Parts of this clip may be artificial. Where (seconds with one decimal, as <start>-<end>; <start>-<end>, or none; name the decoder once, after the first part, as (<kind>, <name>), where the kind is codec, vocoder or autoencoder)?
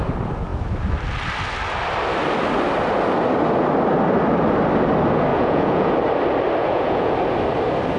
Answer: 5.3-5.9 (vocoder, Vocos); 6.6-7.1